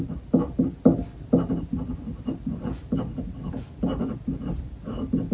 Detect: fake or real real